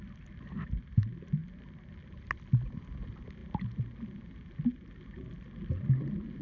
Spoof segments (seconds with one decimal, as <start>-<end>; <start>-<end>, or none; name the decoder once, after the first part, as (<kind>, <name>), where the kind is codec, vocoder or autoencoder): none